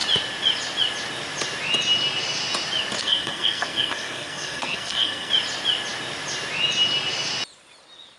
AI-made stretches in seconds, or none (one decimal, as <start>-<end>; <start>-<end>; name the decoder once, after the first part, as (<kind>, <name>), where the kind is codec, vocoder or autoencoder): 3.0-5.3 (codec, SNAC)